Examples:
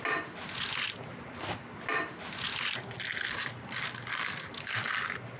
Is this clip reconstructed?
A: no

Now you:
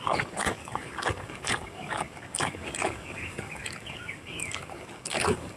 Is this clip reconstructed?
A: yes